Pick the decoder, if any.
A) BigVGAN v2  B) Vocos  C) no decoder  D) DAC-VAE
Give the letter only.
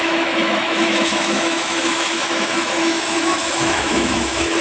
D